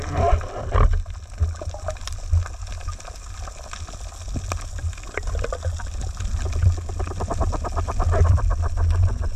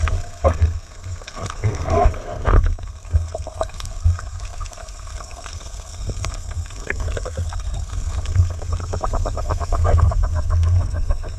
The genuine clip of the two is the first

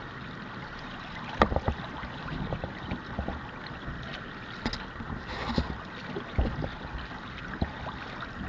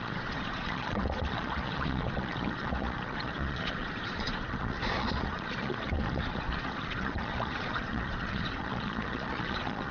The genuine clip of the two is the first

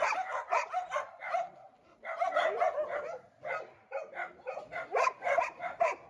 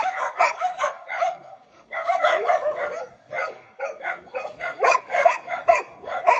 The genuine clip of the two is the first